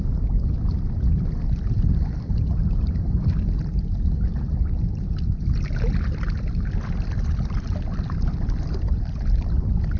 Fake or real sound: real